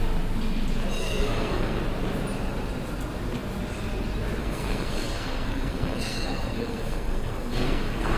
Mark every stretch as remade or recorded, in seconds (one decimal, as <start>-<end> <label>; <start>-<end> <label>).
0.0-1.0 recorded; 1.0-1.8 remade; 1.8-4.4 recorded; 4.4-8.2 remade